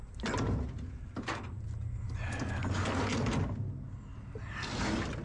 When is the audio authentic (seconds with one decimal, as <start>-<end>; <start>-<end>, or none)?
0.0-5.2